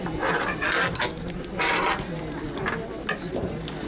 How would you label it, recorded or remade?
recorded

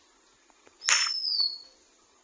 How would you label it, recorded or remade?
recorded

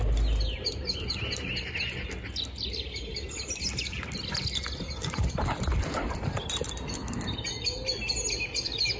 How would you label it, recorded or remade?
recorded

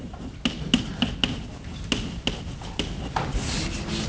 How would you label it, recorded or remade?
recorded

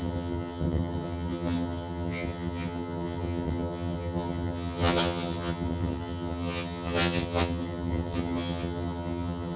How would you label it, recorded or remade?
remade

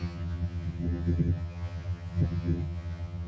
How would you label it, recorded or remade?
remade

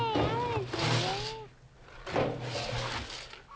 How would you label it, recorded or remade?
recorded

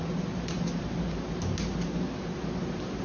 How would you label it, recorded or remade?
recorded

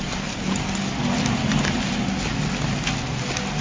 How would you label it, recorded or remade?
recorded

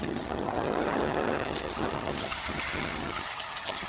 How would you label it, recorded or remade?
remade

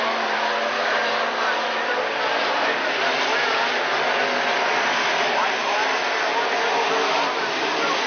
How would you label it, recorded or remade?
recorded